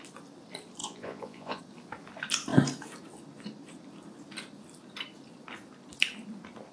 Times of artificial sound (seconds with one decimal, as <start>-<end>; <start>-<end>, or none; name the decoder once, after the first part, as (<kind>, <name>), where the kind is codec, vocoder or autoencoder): 0.8-1.6 (vocoder, Vocos)